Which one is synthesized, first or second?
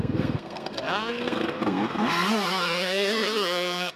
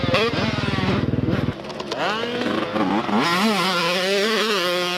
first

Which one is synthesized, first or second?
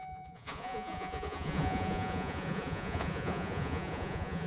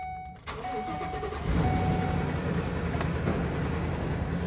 first